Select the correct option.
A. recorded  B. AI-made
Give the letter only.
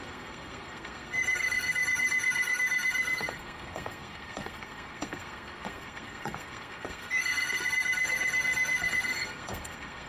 B